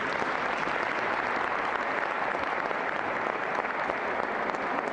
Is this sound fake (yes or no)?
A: no